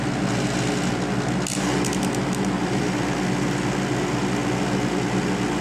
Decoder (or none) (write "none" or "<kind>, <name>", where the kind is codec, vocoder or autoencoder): none